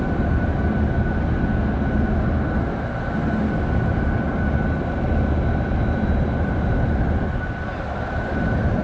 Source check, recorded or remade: recorded